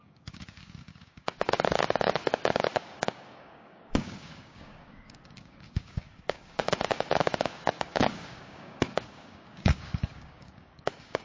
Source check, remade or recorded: remade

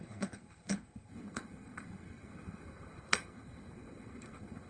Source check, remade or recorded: remade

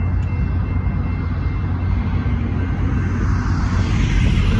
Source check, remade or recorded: recorded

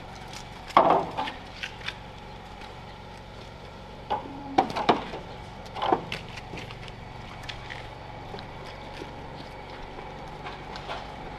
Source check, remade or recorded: remade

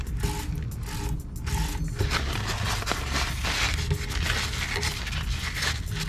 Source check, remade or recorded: recorded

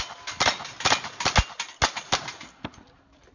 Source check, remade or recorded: recorded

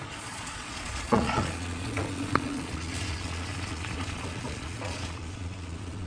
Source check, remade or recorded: remade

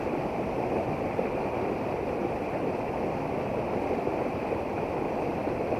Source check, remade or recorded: recorded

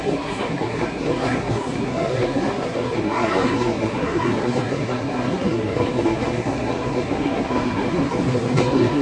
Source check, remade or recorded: remade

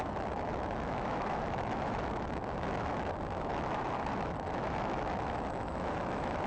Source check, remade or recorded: remade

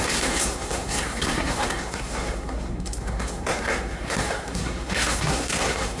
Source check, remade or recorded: remade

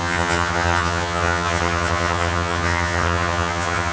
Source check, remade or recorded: remade